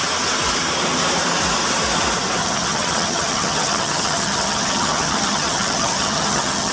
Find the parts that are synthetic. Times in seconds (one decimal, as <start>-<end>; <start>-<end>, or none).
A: 2.4-6.7